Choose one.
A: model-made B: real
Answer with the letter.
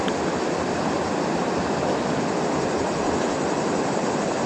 B